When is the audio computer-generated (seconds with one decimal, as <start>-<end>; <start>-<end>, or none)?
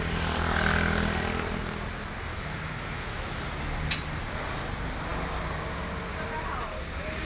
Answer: 2.3-3.4